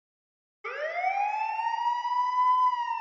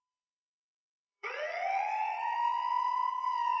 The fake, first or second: second